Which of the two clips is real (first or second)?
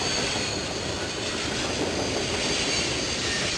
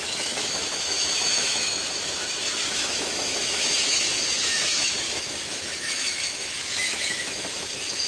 first